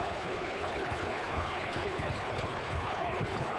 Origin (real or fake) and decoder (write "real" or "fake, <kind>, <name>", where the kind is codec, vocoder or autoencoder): fake, codec, HILCodec